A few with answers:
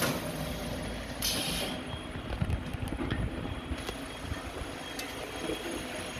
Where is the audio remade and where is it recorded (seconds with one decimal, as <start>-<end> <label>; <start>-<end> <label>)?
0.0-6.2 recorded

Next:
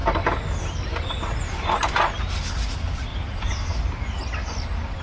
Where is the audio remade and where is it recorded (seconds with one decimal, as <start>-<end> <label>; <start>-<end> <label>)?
0.0-3.1 recorded; 3.1-3.8 remade; 3.8-5.0 recorded

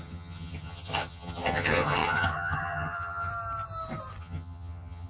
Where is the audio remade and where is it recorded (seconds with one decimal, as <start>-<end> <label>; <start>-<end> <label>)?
0.0-3.3 remade; 3.3-4.2 recorded; 4.2-5.1 remade